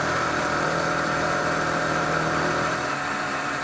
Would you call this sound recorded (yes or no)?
no